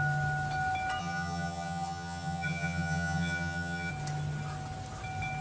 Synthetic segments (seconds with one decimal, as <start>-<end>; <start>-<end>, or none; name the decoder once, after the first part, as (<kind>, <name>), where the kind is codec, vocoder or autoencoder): 1.0-3.9 (vocoder, HiFi-GAN)